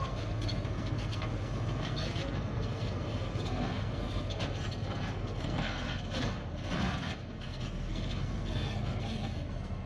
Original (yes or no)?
no